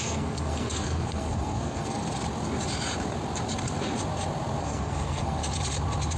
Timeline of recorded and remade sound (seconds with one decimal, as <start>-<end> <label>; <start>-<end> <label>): 0.0-2.0 remade; 2.0-4.6 recorded; 4.6-5.4 remade; 5.4-6.2 recorded